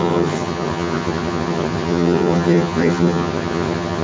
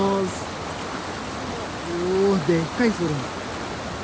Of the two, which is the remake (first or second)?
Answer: first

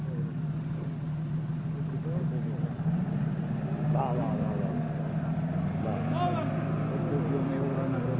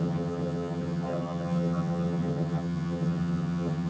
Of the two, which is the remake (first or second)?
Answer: second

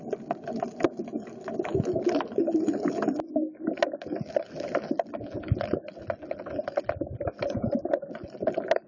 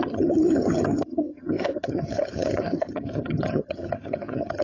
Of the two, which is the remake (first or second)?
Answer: second